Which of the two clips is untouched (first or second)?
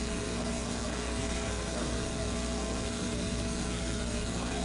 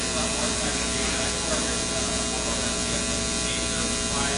second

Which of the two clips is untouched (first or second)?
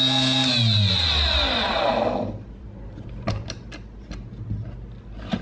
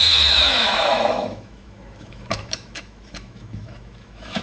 first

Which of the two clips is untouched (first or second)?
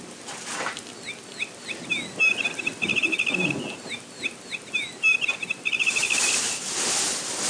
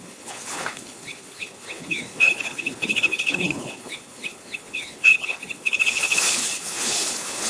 first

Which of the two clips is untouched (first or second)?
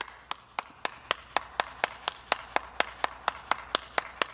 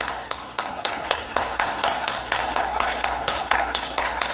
first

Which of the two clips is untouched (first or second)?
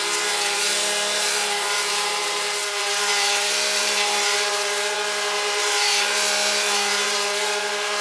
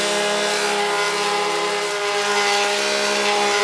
second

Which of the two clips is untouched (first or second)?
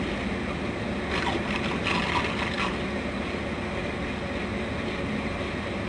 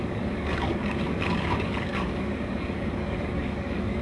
first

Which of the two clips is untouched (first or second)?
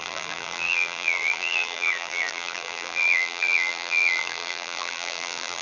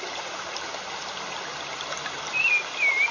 second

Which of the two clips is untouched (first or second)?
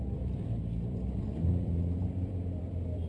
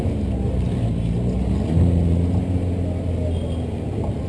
second